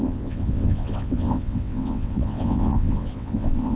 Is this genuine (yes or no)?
no